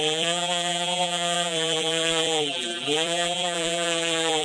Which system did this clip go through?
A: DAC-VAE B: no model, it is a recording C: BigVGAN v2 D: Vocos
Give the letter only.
C